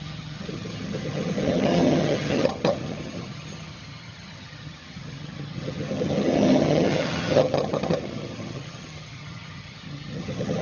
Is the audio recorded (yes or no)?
no